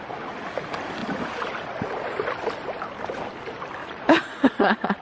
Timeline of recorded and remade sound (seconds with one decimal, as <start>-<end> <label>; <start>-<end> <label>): 0.0-3.8 recorded; 3.8-5.0 remade